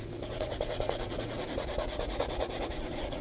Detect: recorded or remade remade